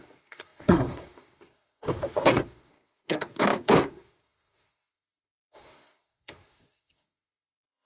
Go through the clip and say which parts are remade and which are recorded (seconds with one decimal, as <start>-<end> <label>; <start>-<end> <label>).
0.0-7.9 remade